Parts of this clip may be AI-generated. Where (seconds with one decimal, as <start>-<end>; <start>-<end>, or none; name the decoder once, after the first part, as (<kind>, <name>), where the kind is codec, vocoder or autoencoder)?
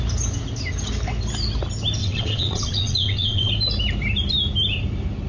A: 2.0-3.5 (vocoder, WaveNeXt)